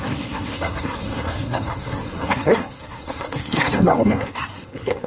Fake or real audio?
fake